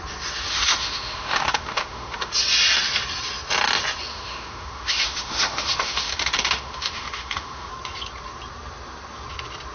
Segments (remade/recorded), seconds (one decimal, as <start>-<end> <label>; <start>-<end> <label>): 0.0-0.5 recorded; 0.5-2.3 remade; 2.3-4.1 recorded; 4.1-7.7 remade; 7.7-9.7 recorded